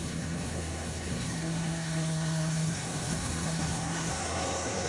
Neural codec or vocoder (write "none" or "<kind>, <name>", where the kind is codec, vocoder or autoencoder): codec, SNAC